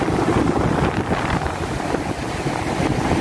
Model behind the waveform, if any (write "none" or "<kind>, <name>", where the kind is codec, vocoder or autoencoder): none